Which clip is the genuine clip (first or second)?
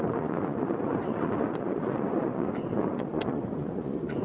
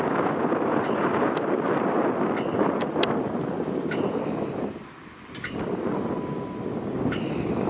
second